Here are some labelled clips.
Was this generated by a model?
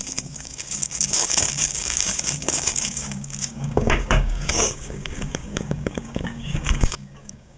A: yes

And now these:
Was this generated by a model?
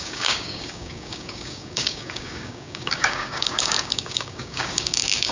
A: yes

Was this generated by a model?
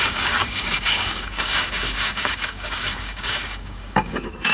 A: yes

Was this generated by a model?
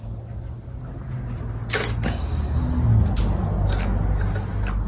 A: no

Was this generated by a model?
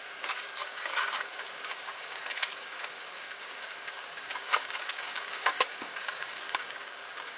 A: yes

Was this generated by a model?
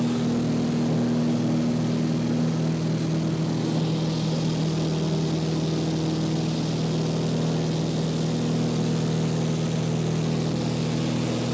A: no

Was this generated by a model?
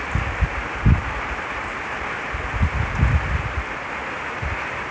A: no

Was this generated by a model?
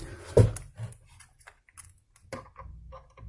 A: no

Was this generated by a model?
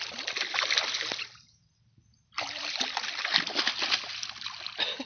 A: no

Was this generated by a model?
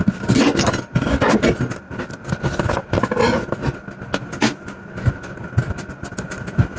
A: no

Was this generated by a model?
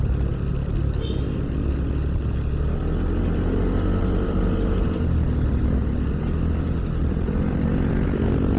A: no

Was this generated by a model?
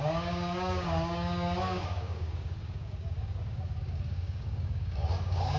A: yes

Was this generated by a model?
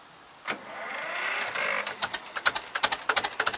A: no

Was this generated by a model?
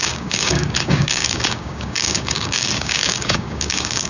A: yes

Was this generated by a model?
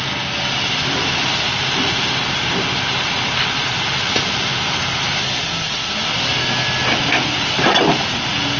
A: no